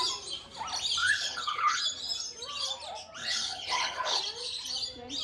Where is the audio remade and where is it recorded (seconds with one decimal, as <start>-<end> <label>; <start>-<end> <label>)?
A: 0.0-1.0 recorded; 1.0-1.8 remade; 1.8-3.2 recorded; 3.2-4.2 remade; 4.2-5.2 recorded